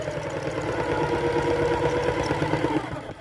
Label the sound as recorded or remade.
recorded